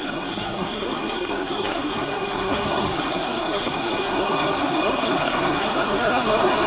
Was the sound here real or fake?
fake